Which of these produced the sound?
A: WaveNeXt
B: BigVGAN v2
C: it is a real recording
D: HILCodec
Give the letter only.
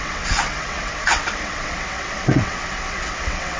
A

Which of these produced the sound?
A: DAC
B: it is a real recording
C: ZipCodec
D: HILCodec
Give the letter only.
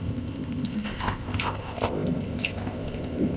C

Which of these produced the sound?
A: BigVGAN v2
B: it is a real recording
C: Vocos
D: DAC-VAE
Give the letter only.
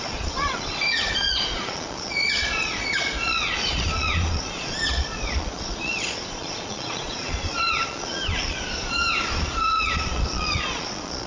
C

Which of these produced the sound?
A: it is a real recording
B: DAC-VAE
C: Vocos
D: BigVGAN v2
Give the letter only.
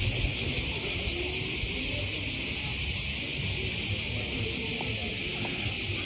A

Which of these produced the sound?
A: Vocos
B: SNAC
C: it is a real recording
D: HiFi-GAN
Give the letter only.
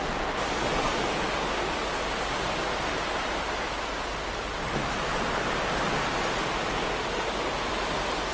C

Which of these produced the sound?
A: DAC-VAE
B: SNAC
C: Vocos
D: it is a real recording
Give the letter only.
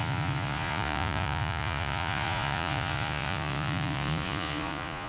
C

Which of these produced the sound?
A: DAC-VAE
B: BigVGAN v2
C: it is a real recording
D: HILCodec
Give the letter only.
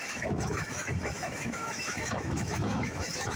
A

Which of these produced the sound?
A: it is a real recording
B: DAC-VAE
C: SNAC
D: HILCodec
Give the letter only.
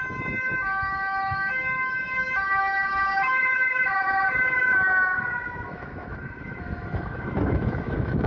B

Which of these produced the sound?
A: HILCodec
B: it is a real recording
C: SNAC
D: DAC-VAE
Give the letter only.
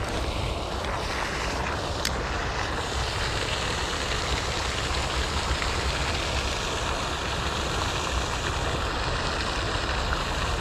B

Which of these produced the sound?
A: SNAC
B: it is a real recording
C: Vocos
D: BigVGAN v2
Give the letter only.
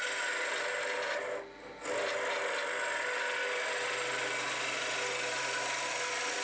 B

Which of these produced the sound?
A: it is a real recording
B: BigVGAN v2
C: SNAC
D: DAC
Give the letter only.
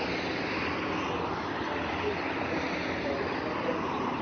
A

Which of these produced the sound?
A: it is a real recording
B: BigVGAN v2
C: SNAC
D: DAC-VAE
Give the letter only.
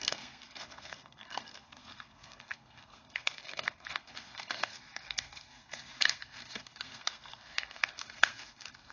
C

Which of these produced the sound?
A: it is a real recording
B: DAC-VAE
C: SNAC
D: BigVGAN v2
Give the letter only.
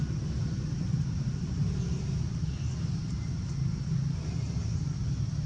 A